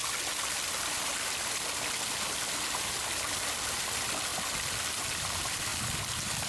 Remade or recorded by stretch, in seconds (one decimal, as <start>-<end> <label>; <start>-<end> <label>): 0.0-6.5 recorded